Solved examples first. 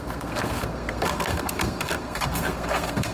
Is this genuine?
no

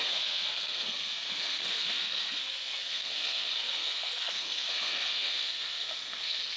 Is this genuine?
no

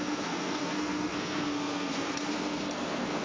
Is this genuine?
no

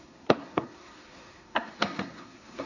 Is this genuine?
no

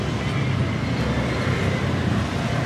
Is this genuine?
yes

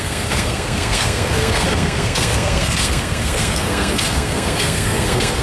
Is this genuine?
no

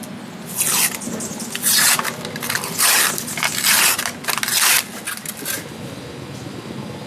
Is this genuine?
yes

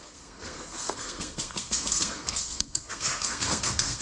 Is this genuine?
no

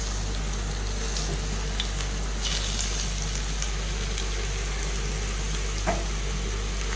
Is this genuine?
yes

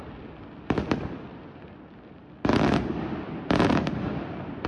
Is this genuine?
yes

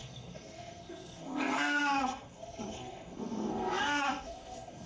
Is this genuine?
no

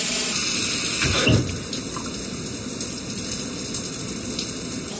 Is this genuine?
yes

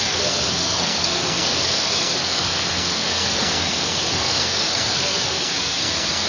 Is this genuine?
no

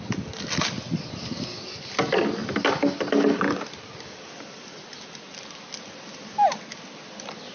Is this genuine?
yes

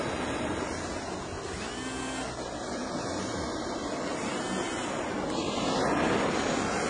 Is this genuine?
yes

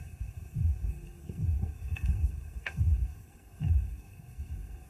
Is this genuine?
no